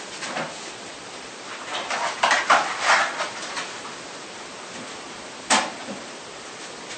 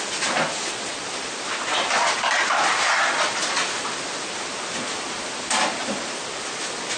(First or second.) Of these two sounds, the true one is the second